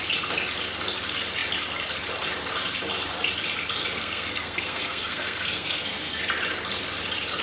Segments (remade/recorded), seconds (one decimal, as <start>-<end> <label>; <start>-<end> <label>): 0.0-3.8 recorded; 3.8-6.2 remade; 6.2-7.4 recorded